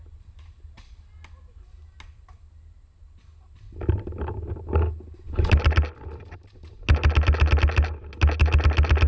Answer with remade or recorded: recorded